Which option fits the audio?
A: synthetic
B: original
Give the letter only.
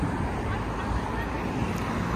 B